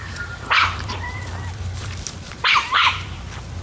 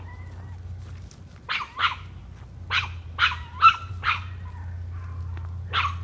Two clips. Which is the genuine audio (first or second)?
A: second